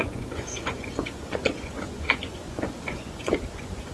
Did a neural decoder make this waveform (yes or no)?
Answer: yes